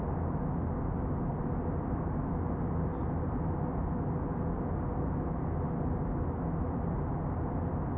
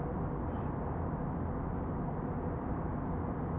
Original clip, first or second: first